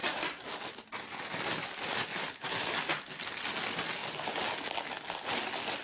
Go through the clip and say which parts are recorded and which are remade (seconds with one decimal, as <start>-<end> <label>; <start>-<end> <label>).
0.0-5.8 recorded